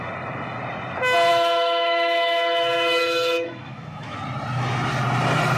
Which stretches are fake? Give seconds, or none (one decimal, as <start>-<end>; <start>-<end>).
1.3-4.2